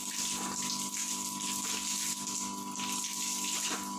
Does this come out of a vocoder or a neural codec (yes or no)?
no